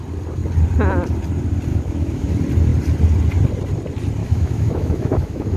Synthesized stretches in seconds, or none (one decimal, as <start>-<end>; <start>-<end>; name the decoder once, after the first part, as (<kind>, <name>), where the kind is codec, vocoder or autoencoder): 1.7-2.3 (autoencoder, DAC-VAE); 4.2-5.6